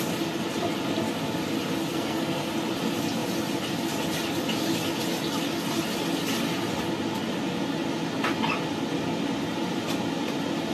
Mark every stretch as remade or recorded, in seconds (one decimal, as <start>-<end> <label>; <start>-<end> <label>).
0.0-1.9 recorded; 1.9-2.5 remade; 2.5-10.7 recorded